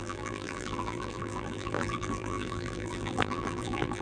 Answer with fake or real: fake